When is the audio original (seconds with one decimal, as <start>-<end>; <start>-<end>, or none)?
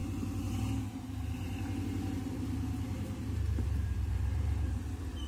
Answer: 0.0-3.2